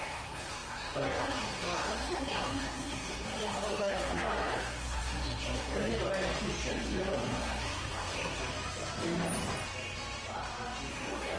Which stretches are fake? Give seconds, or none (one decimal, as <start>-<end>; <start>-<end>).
0.0-5.9; 6.7-8.4; 10.9-11.4